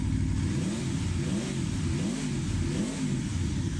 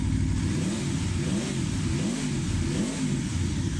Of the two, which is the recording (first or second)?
first